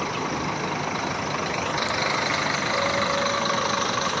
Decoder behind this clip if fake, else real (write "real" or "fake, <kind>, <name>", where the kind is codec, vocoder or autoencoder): real